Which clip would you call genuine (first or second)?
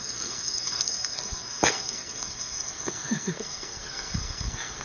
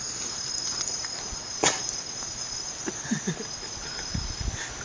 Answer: second